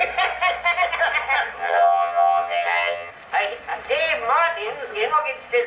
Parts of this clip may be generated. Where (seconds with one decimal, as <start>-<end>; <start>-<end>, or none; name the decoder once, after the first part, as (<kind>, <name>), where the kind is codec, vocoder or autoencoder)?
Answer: 1.6-3.1 (vocoder, HiFi-GAN)